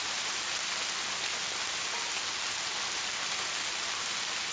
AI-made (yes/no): no